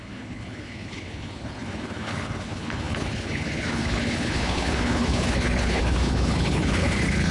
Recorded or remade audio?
remade